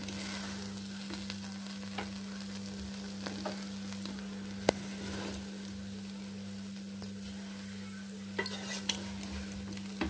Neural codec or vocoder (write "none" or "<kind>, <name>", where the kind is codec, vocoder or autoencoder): none